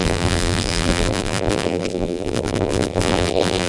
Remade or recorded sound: remade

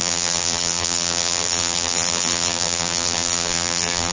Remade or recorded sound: remade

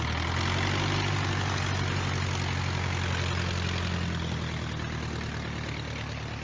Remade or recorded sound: recorded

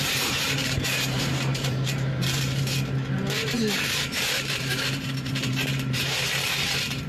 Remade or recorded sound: remade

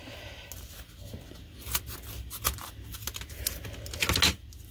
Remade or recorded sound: recorded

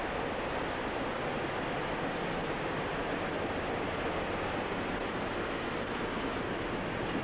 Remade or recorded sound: recorded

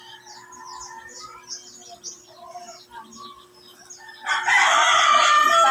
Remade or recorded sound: recorded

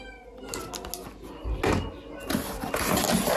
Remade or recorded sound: recorded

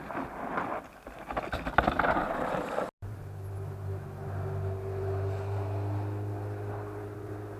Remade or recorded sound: recorded